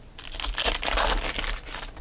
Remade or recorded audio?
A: recorded